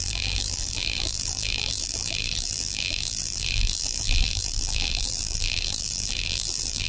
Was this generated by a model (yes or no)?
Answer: yes